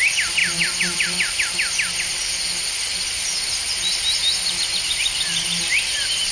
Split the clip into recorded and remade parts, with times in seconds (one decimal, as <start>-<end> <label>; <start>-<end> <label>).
0.0-6.3 recorded